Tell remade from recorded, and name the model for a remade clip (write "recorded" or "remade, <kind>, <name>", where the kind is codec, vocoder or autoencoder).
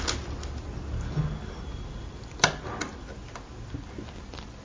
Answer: recorded